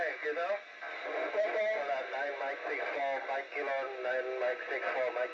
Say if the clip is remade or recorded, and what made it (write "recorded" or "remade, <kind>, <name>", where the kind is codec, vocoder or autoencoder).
recorded